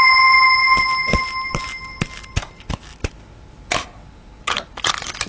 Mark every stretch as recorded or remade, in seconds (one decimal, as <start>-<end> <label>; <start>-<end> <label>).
0.0-5.3 recorded